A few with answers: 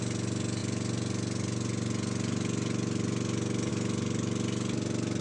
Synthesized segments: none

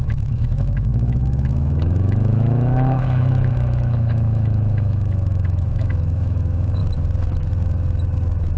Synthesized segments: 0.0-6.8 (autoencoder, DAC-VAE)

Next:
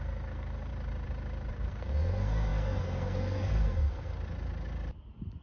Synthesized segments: 0.0-0.7 (codec, SNAC); 1.5-4.1